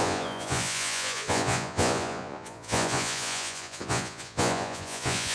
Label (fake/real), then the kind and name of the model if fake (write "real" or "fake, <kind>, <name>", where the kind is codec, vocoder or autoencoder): fake, vocoder, Vocos